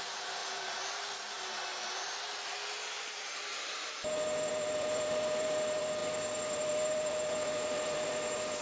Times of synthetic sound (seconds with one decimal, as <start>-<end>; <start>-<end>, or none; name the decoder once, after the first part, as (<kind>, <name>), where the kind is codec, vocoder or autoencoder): 0.0-8.6 (vocoder, BigVGAN v2)